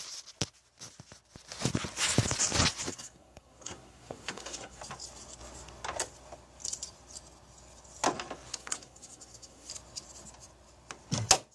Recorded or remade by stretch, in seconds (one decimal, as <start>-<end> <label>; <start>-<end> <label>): 0.0-2.9 recorded; 2.9-4.8 remade; 4.8-8.5 recorded; 8.5-9.7 remade; 9.7-11.5 recorded